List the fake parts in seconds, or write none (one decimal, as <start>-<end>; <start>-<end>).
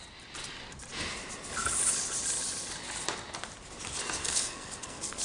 4.2-5.2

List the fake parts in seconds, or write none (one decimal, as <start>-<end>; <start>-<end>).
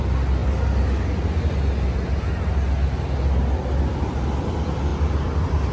none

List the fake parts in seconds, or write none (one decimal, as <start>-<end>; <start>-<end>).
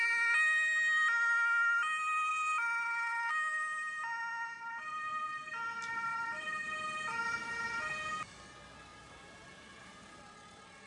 2.3-3.3; 6.1-7.6; 8.9-10.9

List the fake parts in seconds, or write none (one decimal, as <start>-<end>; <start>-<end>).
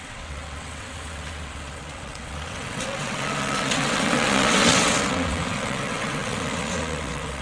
0.0-7.4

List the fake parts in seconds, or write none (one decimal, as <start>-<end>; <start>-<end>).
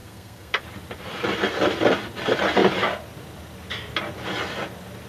0.0-0.6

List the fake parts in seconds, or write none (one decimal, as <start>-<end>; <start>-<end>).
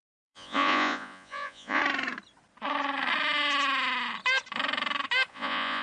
0.0-1.8; 5.3-5.8